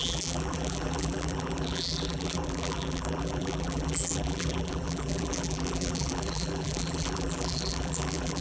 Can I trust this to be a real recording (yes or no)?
no